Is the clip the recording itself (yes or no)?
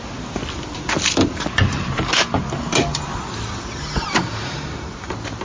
yes